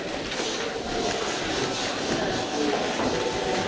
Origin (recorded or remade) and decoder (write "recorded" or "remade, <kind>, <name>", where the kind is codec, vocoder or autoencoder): recorded